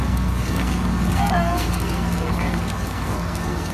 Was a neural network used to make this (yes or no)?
yes